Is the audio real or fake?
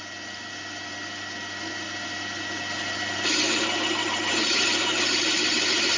real